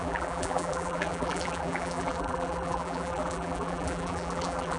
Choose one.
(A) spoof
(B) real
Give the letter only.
A